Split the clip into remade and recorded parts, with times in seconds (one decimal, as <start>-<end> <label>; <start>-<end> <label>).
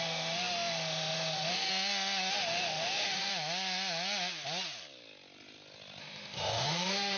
0.0-1.7 remade; 1.7-2.3 recorded; 2.3-3.3 remade; 3.3-6.0 recorded; 6.0-7.2 remade